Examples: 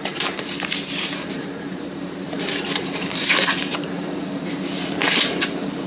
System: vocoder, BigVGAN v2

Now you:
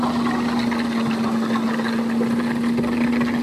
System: none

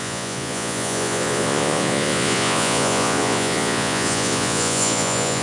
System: vocoder, Vocos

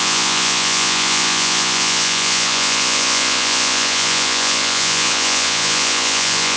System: vocoder, Vocos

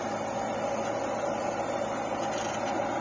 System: vocoder, BigVGAN v2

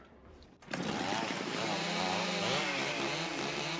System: vocoder, BigVGAN v2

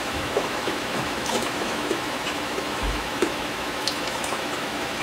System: autoencoder, DAC-VAE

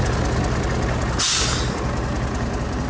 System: none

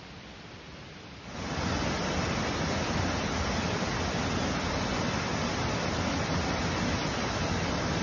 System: none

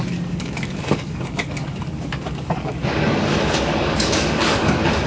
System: codec, DAC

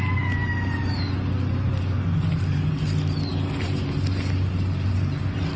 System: none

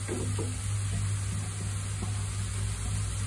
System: none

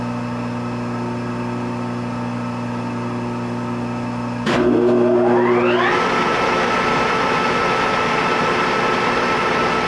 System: none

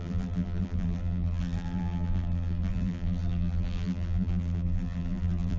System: vocoder, BigVGAN v2